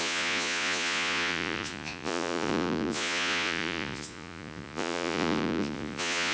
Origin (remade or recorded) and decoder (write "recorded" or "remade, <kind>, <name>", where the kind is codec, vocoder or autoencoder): remade, vocoder, Vocos